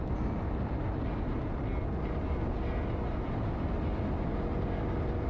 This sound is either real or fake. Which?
real